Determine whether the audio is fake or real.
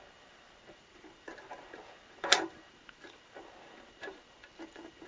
fake